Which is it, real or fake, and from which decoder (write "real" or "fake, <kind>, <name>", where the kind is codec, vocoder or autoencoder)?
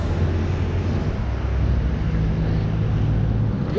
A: real